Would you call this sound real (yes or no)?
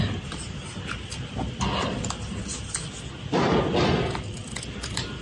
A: yes